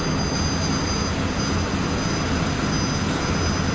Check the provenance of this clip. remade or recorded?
recorded